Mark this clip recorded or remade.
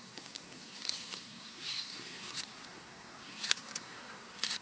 remade